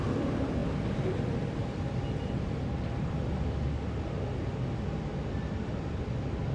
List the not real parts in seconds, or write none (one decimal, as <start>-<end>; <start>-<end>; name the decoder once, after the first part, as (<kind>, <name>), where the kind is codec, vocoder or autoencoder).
none